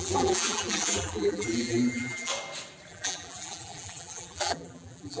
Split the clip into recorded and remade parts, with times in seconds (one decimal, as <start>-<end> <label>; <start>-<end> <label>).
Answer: 0.0-2.3 remade; 2.3-2.9 recorded; 2.9-5.2 remade